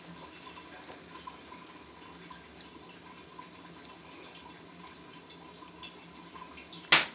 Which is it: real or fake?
real